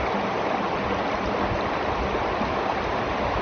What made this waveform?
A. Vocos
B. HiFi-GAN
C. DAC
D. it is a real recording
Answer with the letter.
D